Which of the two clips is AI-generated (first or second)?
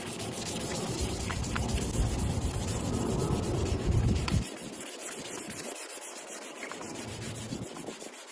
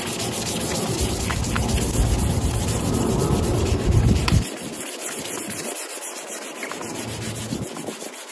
first